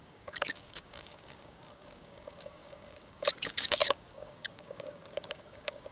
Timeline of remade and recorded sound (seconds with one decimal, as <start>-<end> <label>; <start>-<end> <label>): 0.0-5.9 remade